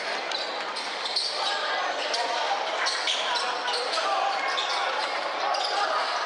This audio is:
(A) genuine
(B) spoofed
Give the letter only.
A